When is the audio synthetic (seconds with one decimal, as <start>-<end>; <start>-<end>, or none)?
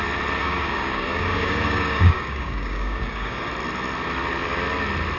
0.4-3.5